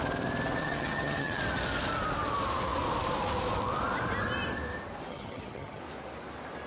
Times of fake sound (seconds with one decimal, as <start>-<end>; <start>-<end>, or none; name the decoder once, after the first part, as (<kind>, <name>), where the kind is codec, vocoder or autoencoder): 0.6-1.4 (vocoder, HiFi-GAN); 5.1-5.8